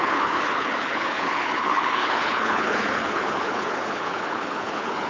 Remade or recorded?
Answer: remade